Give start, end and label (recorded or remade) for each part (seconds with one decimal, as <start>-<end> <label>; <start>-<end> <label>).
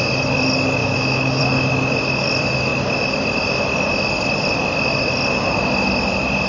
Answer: 0.0-0.8 recorded; 0.8-1.4 remade; 1.4-6.5 recorded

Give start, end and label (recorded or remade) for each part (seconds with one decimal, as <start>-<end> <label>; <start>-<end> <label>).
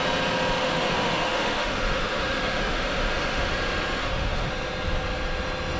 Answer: 0.0-0.6 recorded; 0.6-3.5 remade; 3.5-4.0 recorded; 4.0-4.5 remade; 4.5-5.8 recorded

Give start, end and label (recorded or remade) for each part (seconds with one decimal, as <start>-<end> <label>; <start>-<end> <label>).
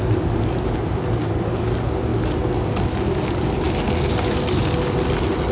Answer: 0.0-5.5 recorded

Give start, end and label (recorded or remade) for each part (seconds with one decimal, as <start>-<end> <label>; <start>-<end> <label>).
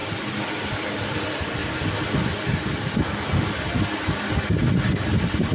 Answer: 0.0-1.0 recorded; 1.0-1.6 remade; 1.6-4.9 recorded; 4.9-5.5 remade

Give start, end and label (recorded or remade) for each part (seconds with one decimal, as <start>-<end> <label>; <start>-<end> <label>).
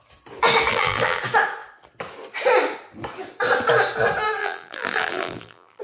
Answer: 0.0-0.7 recorded; 0.7-1.2 remade; 1.2-4.4 recorded; 4.4-5.8 remade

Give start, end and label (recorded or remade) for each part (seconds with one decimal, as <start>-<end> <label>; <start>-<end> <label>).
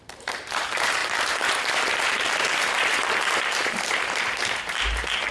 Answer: 0.0-5.3 remade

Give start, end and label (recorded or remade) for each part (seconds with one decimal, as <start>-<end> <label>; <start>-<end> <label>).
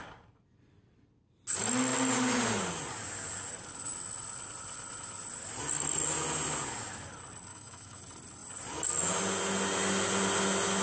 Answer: 0.0-7.5 recorded; 7.5-8.0 remade; 8.0-10.8 recorded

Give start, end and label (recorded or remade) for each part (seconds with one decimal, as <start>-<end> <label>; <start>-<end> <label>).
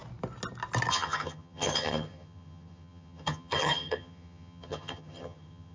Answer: 0.0-0.9 recorded; 0.9-5.7 remade